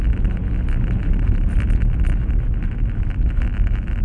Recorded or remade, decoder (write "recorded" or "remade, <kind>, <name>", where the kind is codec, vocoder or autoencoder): recorded